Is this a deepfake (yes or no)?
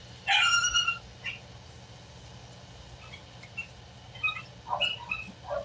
no